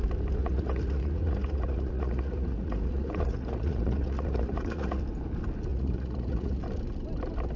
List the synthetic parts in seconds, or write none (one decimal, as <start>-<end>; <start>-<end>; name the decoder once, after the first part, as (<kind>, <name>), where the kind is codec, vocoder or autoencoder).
0.4-5.0 (vocoder, Vocos); 5.7-6.6